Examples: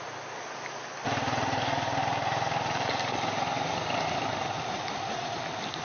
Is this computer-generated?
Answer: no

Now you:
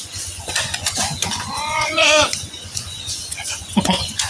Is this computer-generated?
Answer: yes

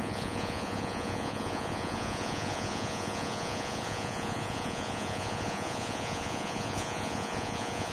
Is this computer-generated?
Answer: yes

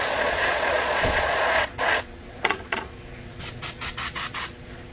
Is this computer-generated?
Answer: yes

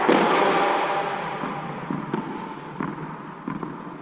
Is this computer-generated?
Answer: no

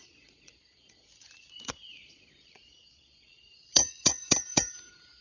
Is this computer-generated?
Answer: yes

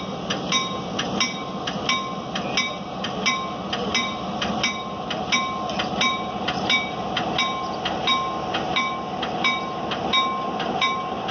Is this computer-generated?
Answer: no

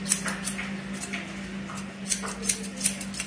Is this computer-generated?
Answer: no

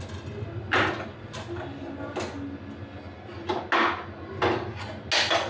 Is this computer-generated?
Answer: no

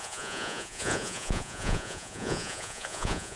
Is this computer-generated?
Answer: yes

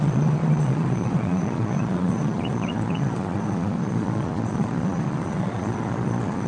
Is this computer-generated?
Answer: yes